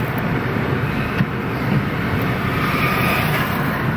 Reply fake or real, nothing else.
real